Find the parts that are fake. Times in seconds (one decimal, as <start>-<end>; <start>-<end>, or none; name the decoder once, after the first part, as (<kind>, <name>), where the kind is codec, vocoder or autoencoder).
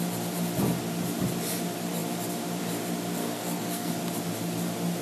3.2-3.9 (codec, SNAC)